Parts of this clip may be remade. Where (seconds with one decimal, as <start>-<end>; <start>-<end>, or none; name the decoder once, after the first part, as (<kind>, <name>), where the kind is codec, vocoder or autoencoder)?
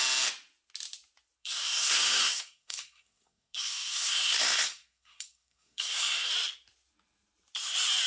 1.4-6.3 (codec, SNAC)